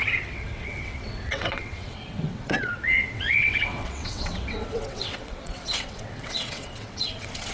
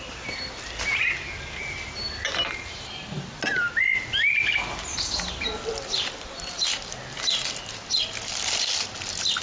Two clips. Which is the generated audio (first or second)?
first